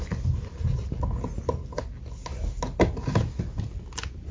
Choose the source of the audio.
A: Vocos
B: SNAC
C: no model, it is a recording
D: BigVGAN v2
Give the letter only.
C